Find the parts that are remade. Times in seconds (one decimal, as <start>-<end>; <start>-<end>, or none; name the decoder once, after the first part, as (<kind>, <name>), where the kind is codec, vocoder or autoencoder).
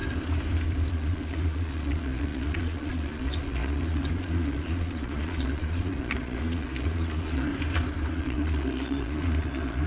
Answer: 0.9-7.5 (vocoder, Vocos); 8.1-9.9